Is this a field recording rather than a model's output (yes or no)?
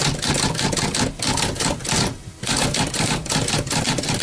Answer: yes